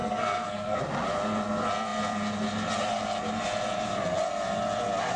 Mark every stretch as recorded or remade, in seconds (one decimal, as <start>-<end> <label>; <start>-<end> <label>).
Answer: 0.0-0.8 remade; 0.8-5.2 recorded